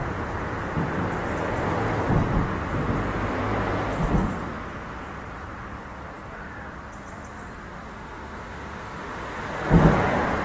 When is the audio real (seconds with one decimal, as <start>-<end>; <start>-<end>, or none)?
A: 0.0-7.9; 9.4-10.4